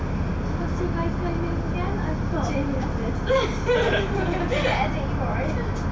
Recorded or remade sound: recorded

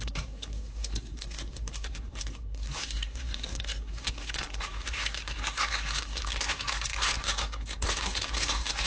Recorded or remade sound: remade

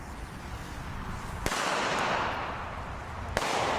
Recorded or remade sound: recorded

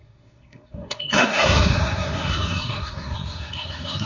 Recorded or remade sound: remade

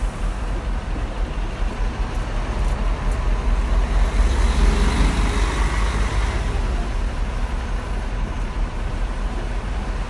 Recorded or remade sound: recorded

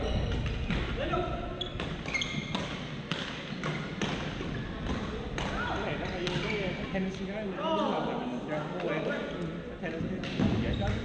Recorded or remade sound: recorded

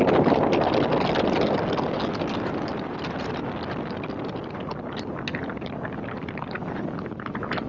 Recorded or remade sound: recorded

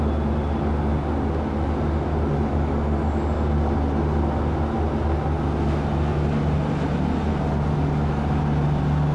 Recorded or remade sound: recorded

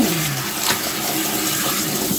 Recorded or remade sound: recorded